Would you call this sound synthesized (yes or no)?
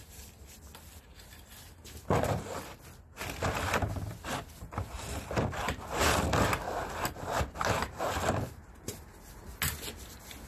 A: no